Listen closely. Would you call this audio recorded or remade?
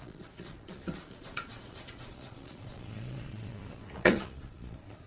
remade